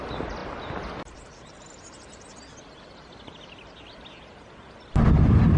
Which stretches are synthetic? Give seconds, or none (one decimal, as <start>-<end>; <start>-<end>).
none